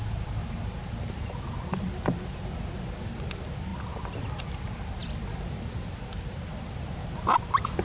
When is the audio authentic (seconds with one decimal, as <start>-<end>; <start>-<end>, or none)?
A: 0.0-7.8